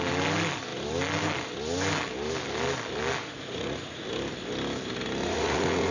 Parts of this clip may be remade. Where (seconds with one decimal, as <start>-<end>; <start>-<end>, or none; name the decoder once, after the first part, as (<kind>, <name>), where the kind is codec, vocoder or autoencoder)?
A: 3.2-4.0 (vocoder, Vocos); 5.2-5.9